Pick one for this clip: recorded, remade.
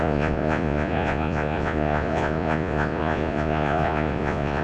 remade